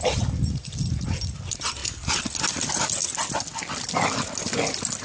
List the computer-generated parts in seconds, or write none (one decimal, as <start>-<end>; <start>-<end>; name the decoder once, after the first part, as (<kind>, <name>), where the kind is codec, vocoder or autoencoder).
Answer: none

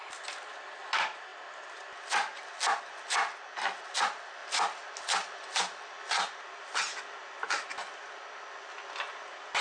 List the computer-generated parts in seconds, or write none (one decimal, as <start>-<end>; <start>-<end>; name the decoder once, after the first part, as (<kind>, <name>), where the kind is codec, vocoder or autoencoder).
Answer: none

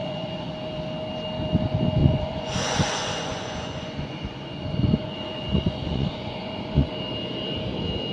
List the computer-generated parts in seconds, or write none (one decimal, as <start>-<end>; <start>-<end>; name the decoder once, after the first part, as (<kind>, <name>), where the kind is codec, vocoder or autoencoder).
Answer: 0.0-0.5 (vocoder, Vocos); 2.0-6.9

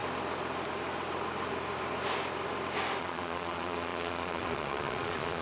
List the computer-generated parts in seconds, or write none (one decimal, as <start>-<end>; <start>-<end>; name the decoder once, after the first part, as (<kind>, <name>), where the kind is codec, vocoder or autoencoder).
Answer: 3.0-5.4 (vocoder, Vocos)

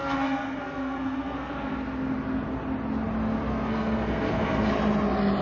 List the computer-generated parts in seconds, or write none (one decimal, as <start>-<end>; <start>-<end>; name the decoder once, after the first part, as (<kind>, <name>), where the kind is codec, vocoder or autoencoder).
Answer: 0.0-1.5 (codec, SNAC); 3.5-4.7

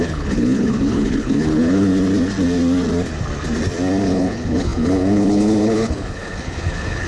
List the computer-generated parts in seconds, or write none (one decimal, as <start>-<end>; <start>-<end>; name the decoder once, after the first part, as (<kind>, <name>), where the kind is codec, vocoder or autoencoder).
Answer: 0.0-1.9 (codec, HILCodec); 4.0-7.1

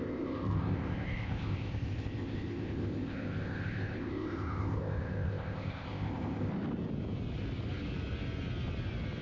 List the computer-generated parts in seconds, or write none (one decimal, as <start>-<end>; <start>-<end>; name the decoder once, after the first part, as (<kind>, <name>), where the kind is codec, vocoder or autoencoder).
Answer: 0.0-6.5 (codec, ZipCodec)